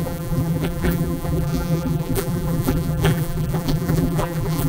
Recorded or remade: remade